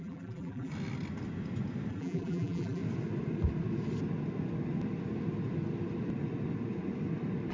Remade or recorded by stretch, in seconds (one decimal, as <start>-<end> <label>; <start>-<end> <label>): 0.0-0.7 remade; 0.7-1.9 recorded; 1.9-2.8 remade; 2.8-7.5 recorded